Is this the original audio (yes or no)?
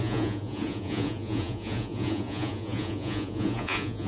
no